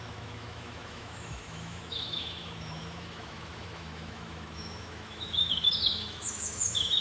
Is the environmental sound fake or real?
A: fake